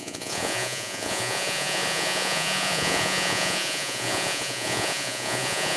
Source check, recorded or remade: remade